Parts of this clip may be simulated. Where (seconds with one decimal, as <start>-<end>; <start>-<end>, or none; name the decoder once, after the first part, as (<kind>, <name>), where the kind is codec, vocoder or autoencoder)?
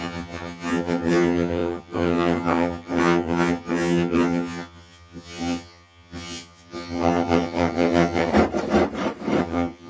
0.0-8.3 (vocoder, HiFi-GAN); 9.4-9.9